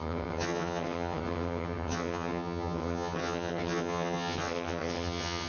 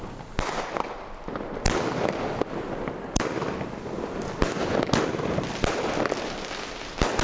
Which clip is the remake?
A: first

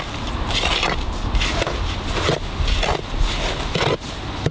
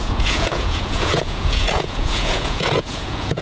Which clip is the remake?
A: second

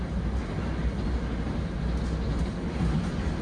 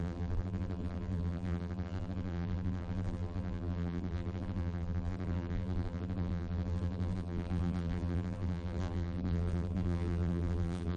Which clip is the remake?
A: second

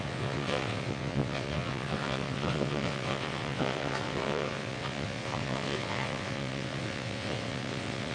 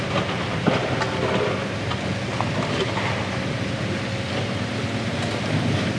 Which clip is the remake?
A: first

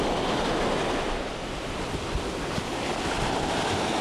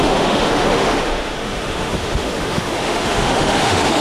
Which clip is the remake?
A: second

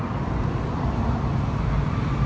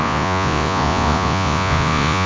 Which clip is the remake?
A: second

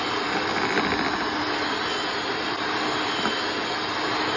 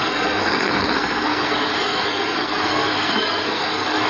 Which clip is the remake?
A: second